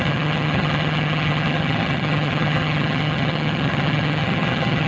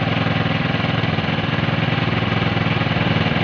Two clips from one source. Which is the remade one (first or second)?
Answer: first